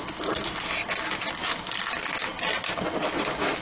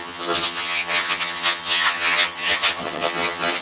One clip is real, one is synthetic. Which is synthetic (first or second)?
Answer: second